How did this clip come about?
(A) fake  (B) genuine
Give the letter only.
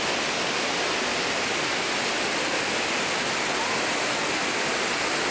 B